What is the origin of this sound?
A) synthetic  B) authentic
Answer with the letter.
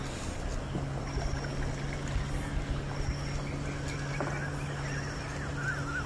B